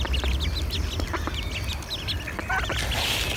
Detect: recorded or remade recorded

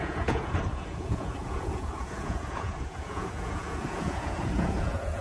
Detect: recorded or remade remade